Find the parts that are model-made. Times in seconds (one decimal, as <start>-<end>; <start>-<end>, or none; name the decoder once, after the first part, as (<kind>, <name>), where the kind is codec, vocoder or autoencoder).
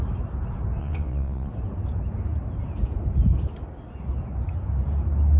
0.8-1.5 (vocoder, WaveNeXt)